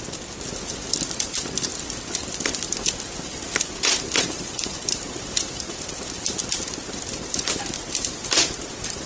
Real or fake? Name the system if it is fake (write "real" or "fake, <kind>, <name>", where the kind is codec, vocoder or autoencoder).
real